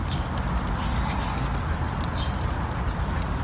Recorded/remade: recorded